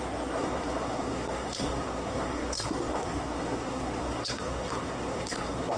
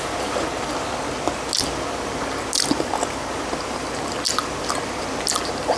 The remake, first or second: first